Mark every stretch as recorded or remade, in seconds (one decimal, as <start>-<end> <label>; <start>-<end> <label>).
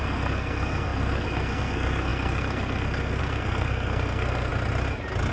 0.0-4.5 remade; 4.5-5.3 recorded